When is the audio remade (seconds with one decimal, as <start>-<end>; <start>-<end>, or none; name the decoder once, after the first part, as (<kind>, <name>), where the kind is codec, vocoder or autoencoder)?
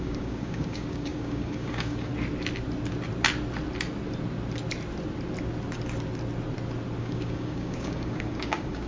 0.0-2.1 (codec, DAC); 7.0-8.9